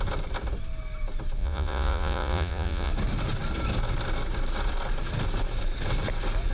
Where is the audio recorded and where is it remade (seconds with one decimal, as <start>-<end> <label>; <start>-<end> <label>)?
0.0-1.4 recorded; 1.4-2.9 remade; 2.9-6.5 recorded